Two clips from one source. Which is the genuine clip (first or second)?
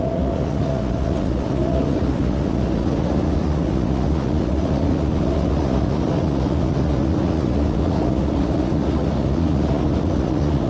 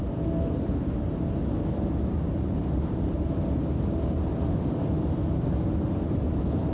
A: second